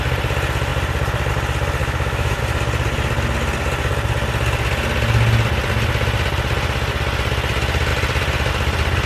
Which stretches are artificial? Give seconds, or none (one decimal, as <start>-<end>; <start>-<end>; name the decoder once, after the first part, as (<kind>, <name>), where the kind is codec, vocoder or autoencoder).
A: 1.8-2.4 (autoencoder, DAC-VAE)